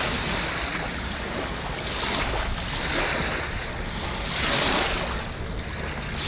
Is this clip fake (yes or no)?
no